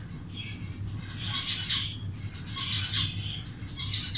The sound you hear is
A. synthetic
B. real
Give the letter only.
B